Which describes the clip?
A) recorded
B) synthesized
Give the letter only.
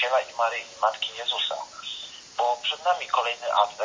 A